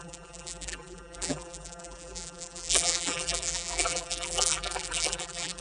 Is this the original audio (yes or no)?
no